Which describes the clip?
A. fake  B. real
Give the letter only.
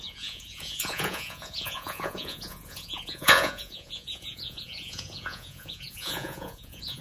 A